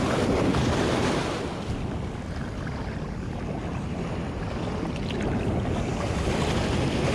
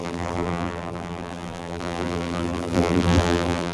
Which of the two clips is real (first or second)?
first